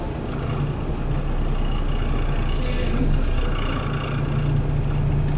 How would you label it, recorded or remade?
recorded